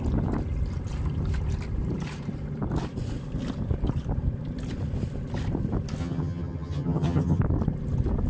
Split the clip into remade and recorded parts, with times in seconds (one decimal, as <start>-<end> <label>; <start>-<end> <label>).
0.0-6.0 recorded; 6.0-7.4 remade; 7.4-8.3 recorded